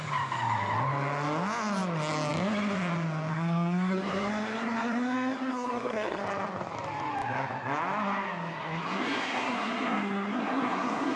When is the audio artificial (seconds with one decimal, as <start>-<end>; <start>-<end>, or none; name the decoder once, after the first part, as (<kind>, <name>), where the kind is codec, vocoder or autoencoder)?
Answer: 3.3-6.2 (codec, SNAC); 8.5-11.2